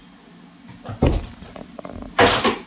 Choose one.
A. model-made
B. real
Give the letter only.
B